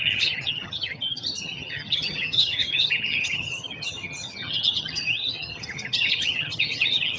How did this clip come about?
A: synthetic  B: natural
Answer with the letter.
A